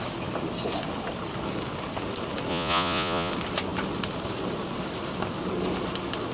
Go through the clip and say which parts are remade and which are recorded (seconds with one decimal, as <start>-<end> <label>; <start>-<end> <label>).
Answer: 0.0-2.5 recorded; 2.5-3.3 remade; 3.3-6.3 recorded